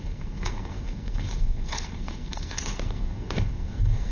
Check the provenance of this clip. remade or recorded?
remade